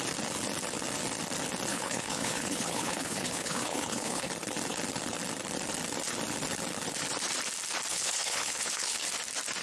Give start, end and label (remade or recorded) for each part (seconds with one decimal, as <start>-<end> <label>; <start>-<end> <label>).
0.0-1.7 recorded; 1.7-4.3 remade; 4.3-7.9 recorded; 7.9-9.1 remade; 9.1-9.6 recorded